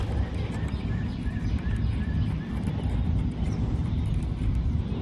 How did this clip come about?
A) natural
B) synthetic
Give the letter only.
A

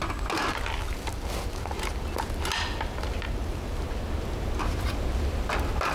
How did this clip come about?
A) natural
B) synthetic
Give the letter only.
A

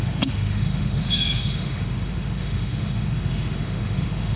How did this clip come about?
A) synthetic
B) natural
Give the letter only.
A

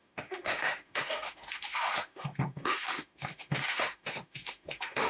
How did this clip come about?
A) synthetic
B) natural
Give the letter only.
A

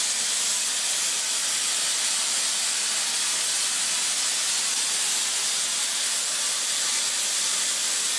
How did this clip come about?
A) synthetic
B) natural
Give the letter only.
B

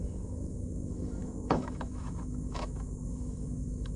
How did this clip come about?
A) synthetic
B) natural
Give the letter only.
A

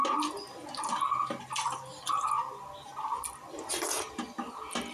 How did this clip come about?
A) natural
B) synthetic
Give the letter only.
A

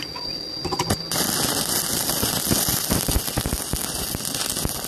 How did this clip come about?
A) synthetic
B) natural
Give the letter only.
B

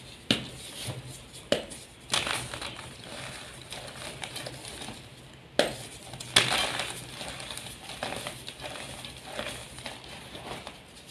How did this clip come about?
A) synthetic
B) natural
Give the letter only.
B